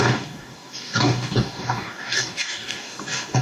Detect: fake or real fake